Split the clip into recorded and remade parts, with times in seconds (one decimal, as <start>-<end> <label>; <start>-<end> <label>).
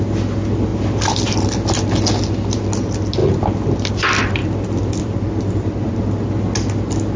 0.0-4.4 recorded; 4.4-5.9 remade; 5.9-7.2 recorded